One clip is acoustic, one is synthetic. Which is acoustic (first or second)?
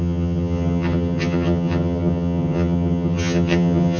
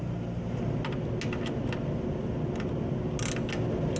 second